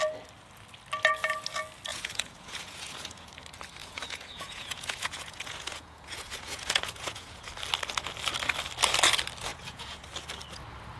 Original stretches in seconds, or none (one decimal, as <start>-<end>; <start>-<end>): 0.0-1.9; 3.3-3.8; 7.4-9.5; 10.0-11.0